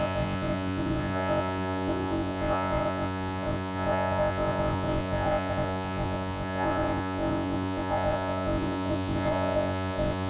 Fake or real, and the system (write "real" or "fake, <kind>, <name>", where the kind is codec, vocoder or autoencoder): fake, vocoder, Vocos